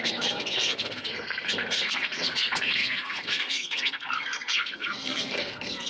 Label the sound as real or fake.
fake